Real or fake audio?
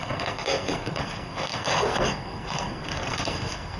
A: fake